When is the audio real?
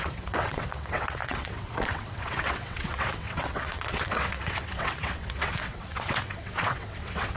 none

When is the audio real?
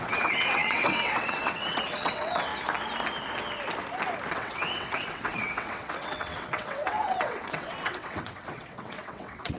2.5-4.3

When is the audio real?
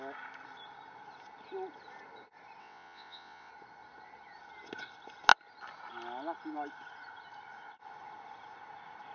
0.0-2.6; 3.5-9.1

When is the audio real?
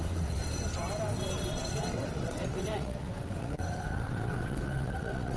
0.4-1.5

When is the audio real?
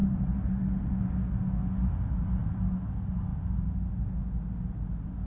0.0-5.3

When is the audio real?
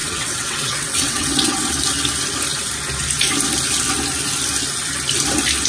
1.7-5.7